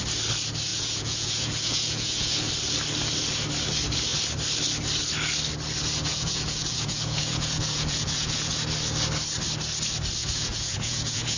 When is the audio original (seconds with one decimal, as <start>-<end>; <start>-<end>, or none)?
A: 0.0-0.7; 2.5-6.1; 8.5-10.2